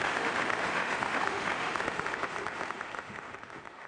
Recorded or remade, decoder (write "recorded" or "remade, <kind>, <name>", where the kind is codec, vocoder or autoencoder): remade, autoencoder, DAC-VAE